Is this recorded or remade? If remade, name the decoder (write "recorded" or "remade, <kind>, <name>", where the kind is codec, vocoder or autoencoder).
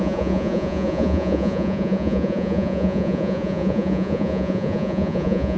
remade, vocoder, Vocos